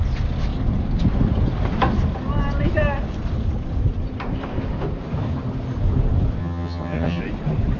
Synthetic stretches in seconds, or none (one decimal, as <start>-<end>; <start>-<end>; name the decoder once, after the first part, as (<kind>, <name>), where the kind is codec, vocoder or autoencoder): 6.4-7.2 (vocoder, HiFi-GAN)